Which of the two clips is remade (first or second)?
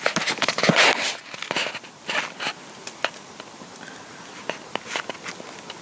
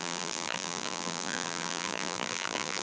second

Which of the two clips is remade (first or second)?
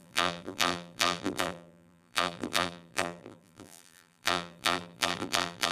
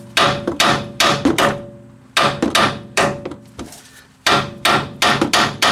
first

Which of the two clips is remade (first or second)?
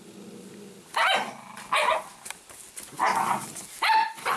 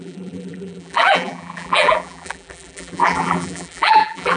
second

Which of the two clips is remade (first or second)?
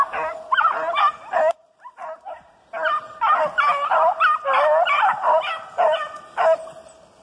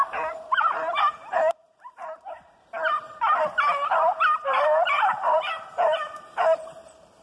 second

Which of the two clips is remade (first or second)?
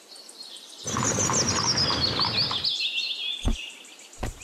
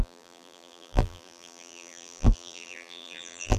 second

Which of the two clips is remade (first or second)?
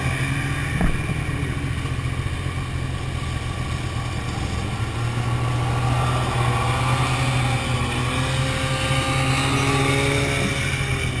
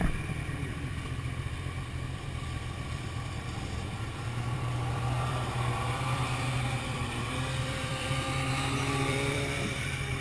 second